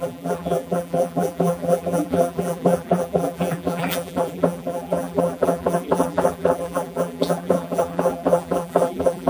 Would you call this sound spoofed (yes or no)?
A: yes